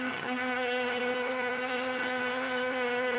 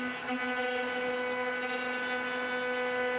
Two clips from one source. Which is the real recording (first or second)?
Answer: second